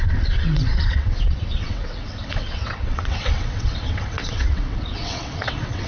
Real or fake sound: fake